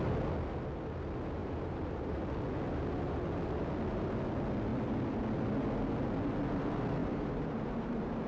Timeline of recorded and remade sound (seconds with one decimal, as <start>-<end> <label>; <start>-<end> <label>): 0.0-1.4 recorded; 1.4-2.2 remade; 2.2-7.0 recorded; 7.0-8.3 remade